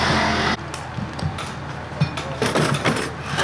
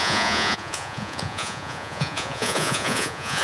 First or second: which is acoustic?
first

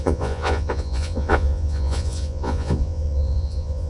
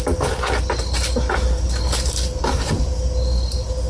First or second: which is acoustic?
second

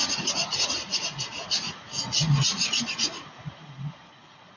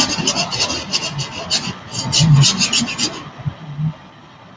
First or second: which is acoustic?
second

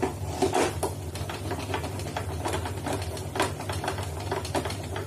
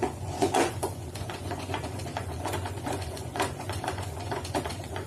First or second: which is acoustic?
first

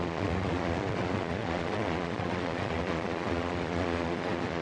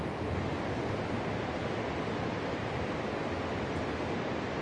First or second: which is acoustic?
second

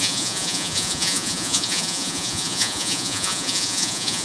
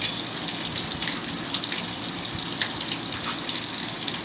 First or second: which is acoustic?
second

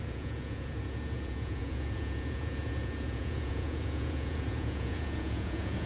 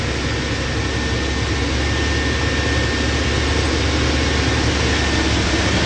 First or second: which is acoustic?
second